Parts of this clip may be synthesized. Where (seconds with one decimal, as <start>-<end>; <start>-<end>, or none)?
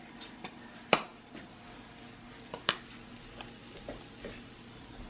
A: none